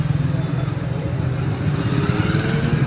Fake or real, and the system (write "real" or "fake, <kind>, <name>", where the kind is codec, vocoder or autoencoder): real